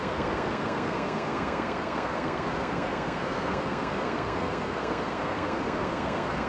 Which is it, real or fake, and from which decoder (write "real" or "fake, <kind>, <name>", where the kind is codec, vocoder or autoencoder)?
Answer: fake, codec, SNAC